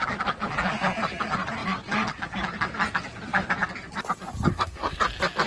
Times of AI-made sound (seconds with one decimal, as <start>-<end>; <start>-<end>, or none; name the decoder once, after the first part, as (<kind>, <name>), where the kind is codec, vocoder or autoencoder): 4.5-5.0 (codec, SNAC)